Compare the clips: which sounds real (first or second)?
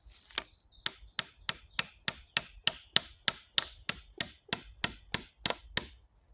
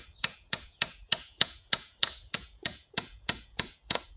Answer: first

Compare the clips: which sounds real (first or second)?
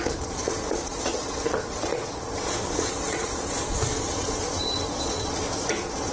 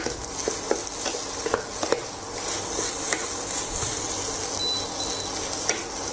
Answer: second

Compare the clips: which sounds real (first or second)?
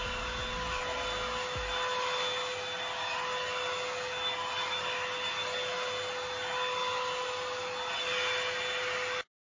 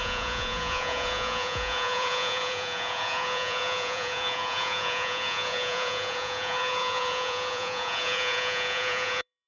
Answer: first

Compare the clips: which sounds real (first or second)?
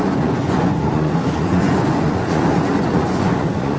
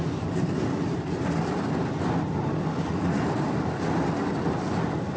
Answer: second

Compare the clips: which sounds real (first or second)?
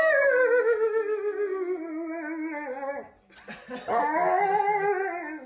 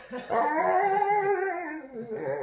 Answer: first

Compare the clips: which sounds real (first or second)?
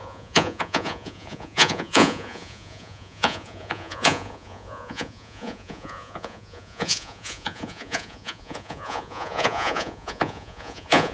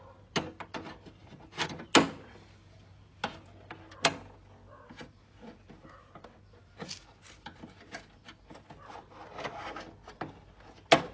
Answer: second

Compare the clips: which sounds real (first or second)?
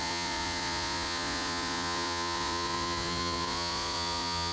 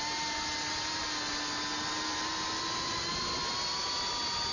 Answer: second